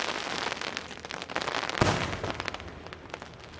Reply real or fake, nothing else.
real